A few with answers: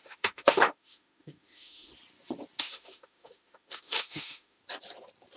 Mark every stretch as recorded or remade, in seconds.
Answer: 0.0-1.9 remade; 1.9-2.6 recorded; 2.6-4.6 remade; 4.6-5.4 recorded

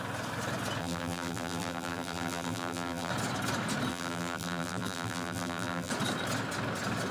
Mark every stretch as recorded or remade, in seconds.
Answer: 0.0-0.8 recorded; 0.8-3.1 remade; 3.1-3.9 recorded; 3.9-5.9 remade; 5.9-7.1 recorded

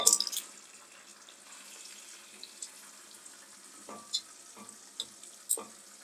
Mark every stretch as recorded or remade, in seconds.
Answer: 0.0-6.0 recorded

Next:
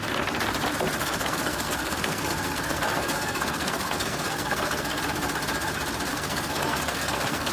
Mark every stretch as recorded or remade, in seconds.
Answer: 0.0-1.0 recorded; 1.0-5.0 remade; 5.0-6.1 recorded; 6.1-7.5 remade

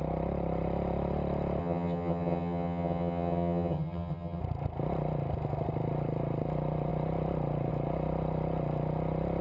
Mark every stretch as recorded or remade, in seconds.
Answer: 0.0-1.6 recorded; 1.6-4.4 remade; 4.4-9.4 recorded